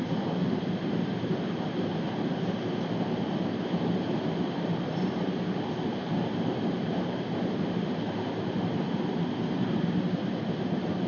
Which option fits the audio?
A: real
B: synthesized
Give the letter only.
B